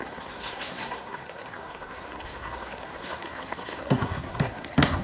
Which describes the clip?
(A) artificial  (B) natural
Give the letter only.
A